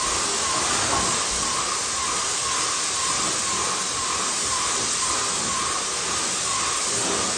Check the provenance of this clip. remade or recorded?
recorded